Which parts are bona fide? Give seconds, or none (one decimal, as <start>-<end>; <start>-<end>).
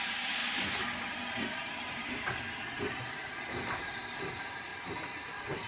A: 0.0-5.7